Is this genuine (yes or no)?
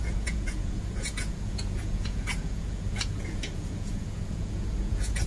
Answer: no